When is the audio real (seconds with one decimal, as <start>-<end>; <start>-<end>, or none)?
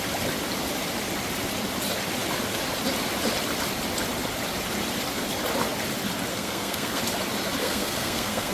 0.0-6.3; 7.0-7.6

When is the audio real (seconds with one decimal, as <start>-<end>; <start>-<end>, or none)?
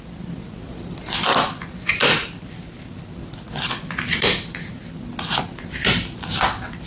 0.0-6.9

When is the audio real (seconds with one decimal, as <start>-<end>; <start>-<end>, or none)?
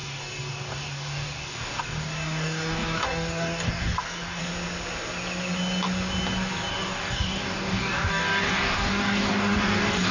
4.4-6.7